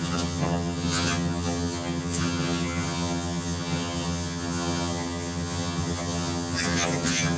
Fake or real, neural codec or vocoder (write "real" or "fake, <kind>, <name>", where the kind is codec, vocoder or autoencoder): fake, vocoder, HiFi-GAN